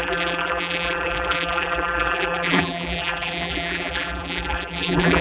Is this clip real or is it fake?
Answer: fake